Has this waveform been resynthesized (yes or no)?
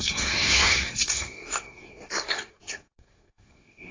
yes